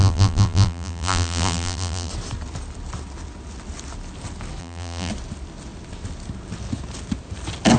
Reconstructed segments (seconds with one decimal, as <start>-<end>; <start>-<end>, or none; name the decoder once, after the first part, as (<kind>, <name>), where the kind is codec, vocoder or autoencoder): 0.0-2.1 (vocoder, BigVGAN v2); 4.6-5.1